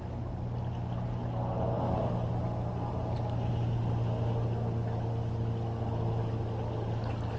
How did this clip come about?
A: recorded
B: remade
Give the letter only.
A